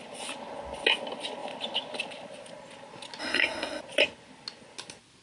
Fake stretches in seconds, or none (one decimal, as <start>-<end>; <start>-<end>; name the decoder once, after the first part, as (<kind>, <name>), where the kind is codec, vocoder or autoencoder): 3.2-3.8 (codec, SNAC)